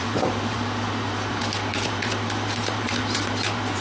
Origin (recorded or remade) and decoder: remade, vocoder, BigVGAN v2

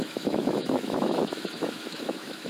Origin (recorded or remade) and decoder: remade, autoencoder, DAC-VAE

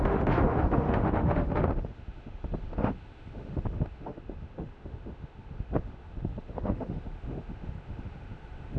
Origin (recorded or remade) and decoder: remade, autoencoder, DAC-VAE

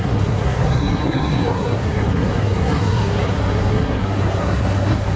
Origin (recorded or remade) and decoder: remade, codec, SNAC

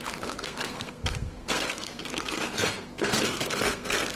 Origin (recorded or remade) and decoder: remade, codec, SNAC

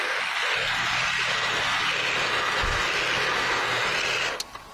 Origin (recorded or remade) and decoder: recorded